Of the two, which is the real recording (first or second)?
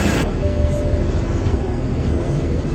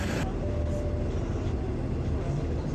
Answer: second